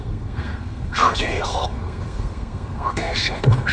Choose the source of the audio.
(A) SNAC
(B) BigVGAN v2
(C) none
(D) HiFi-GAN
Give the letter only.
A